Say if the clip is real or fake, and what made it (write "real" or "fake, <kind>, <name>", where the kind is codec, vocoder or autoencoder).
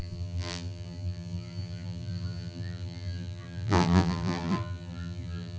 fake, vocoder, BigVGAN v2